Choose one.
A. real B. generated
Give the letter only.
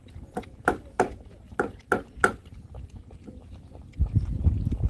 A